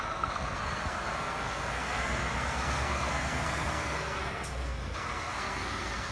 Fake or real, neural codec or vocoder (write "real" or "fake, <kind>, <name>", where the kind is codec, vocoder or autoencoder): fake, codec, SNAC